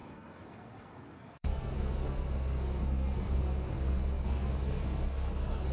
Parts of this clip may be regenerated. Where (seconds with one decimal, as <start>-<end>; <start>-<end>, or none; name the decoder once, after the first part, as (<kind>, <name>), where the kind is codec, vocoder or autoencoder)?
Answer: 0.0-5.7 (codec, SNAC)